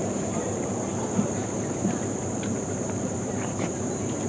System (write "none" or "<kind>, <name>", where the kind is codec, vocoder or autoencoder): vocoder, BigVGAN v2